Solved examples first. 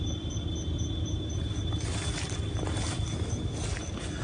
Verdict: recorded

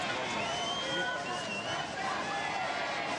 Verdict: recorded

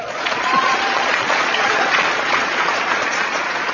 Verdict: remade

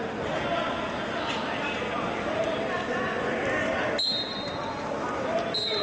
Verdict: recorded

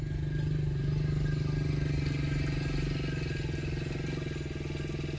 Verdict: recorded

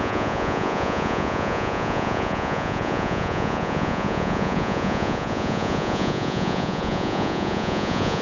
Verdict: remade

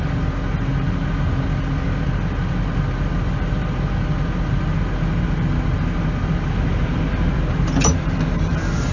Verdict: recorded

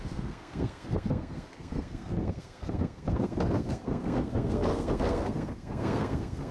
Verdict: remade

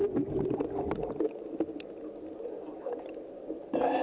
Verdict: recorded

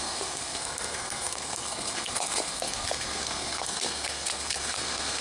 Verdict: remade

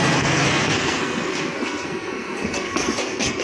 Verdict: remade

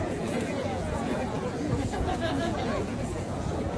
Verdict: remade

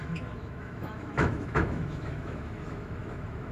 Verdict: remade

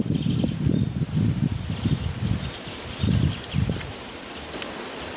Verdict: recorded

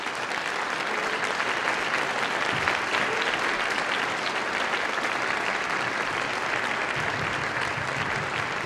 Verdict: recorded